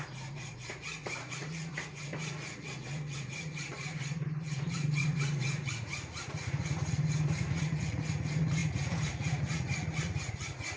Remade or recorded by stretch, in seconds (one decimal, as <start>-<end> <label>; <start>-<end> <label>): 0.0-10.8 remade